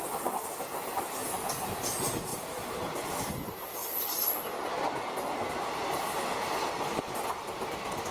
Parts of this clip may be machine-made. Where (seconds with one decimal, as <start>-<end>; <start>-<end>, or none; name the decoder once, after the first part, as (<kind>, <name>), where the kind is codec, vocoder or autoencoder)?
2.3-3.3 (vocoder, BigVGAN v2)